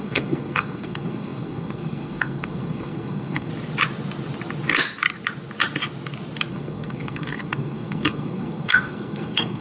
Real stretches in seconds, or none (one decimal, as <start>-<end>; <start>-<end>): 3.5-6.5

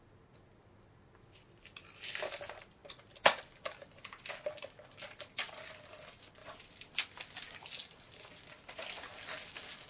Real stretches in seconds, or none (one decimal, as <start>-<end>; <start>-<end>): 0.0-9.9

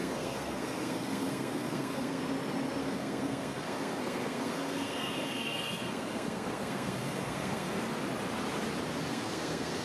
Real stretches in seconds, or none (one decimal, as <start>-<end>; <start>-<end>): 2.2-2.8; 7.9-9.1